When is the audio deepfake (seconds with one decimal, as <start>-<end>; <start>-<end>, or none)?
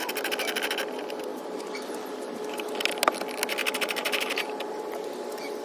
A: 1.3-2.1; 3.6-4.6